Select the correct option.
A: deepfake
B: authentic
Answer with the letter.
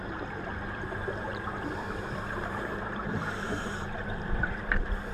A